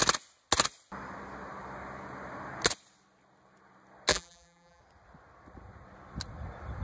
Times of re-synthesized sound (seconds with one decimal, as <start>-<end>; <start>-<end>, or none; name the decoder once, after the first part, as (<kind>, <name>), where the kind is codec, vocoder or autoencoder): 4.1-4.8 (vocoder, BigVGAN v2)